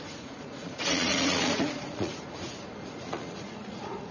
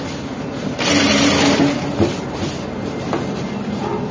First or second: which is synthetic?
first